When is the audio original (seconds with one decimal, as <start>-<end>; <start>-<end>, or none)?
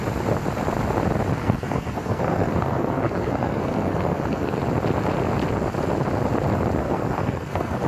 0.0-1.4; 4.6-6.8